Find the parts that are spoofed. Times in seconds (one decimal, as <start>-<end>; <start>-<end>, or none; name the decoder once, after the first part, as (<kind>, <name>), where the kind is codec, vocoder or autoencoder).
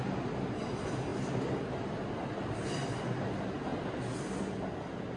none